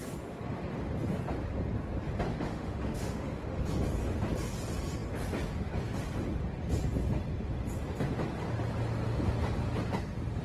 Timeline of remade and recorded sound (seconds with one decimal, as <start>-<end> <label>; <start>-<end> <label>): 0.0-2.3 recorded; 2.3-3.6 remade; 3.6-10.4 recorded